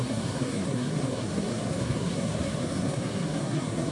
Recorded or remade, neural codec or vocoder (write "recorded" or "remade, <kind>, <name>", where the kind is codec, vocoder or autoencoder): remade, codec, SNAC